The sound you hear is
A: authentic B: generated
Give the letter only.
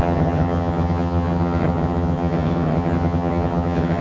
B